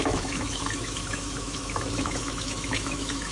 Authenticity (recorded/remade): remade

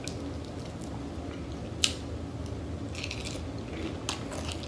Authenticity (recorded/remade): recorded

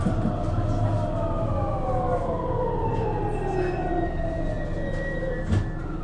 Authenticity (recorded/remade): recorded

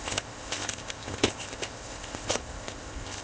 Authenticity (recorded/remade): remade